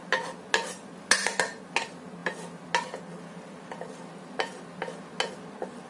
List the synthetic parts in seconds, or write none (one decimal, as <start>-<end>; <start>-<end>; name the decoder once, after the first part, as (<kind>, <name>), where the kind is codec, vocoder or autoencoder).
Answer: none